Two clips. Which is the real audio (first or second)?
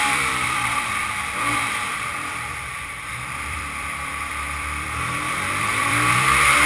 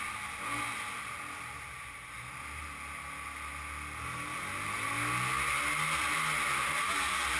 second